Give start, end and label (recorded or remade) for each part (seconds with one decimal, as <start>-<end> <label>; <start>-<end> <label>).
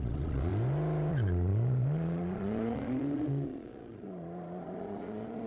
0.0-0.5 remade; 0.5-1.1 recorded; 1.1-5.5 remade